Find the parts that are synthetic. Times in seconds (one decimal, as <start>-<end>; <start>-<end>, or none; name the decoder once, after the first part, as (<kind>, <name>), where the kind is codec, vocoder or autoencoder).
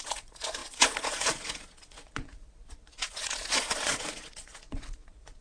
0.0-5.4 (vocoder, Vocos)